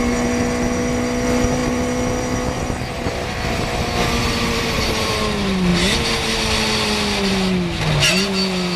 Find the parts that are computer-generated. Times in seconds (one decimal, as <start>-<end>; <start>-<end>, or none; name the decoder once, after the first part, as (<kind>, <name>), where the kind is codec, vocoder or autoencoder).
4.2-5.1 (vocoder, BigVGAN v2)